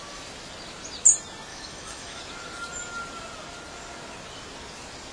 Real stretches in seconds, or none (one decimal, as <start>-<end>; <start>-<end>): 0.0-1.5; 2.2-5.1